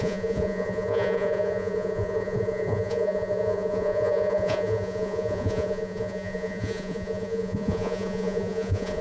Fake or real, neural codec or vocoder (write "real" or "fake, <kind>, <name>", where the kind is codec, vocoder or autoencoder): fake, vocoder, Vocos